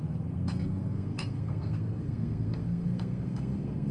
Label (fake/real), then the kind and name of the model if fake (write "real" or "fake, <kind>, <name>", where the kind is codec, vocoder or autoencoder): fake, codec, SNAC